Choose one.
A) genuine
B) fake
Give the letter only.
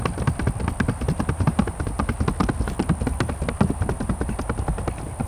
A